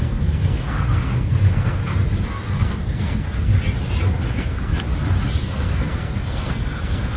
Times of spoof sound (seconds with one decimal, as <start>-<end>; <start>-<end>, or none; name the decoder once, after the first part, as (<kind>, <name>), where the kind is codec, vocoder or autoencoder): 0.0-1.8 (codec, SNAC); 2.6-3.5; 4.3-4.7; 5.4-7.2